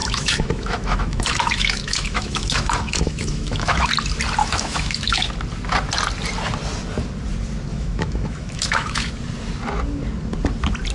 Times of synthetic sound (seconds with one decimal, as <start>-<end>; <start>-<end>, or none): 0.0-3.9; 4.4-5.3; 7.7-9.1